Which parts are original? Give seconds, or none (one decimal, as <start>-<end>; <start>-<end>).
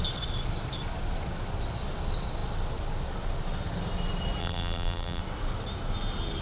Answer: 0.0-4.4; 5.2-6.4